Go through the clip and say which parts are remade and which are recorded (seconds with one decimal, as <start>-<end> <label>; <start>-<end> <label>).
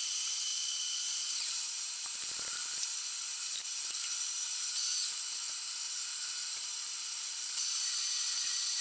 0.0-0.5 remade; 0.5-1.2 recorded; 1.2-2.6 remade; 2.6-7.6 recorded; 7.6-8.8 remade